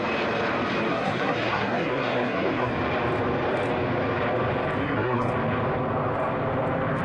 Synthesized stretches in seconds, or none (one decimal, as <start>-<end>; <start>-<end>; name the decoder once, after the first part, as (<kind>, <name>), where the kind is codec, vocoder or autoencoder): 0.9-2.7 (codec, SNAC); 4.8-5.3